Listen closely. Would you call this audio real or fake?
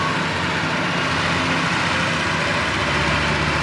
real